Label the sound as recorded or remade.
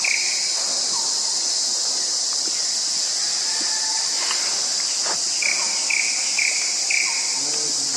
recorded